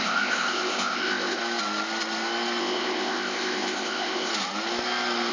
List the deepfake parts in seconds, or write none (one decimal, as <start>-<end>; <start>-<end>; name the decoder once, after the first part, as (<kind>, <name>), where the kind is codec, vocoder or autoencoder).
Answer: 0.0-1.4 (codec, ZipCodec); 2.6-4.3